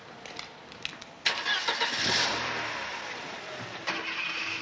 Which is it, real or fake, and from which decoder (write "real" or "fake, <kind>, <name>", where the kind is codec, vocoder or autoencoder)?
real